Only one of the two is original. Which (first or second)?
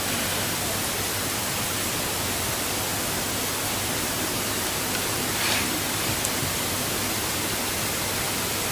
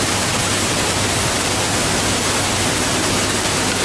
second